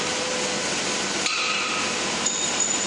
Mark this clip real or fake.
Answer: fake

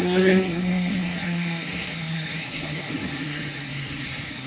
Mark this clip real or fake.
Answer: fake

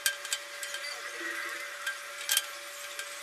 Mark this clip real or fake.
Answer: real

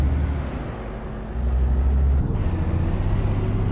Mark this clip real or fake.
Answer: real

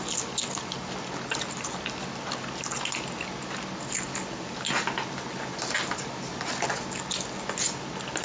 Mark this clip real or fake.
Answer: real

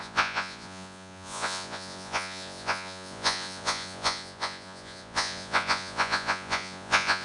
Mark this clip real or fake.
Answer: fake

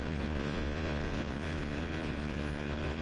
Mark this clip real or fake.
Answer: fake